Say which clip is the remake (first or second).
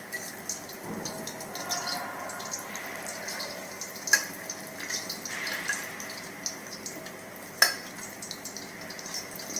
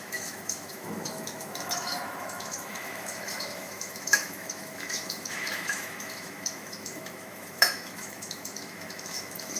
second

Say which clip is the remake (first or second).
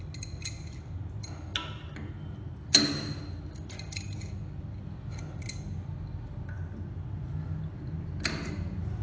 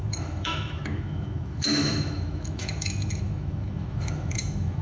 second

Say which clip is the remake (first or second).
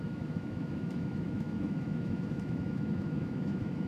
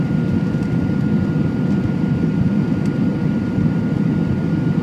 first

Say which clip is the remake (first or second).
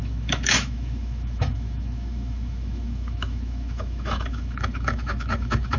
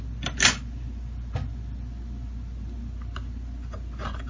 first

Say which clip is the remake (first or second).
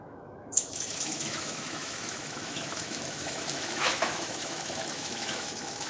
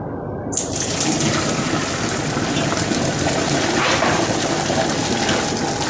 first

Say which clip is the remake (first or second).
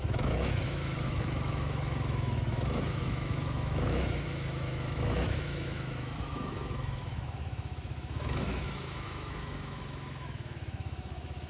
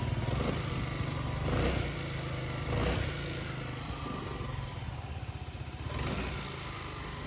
first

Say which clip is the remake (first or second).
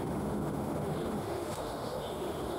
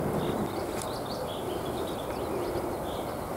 first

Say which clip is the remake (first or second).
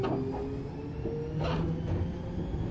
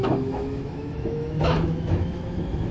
second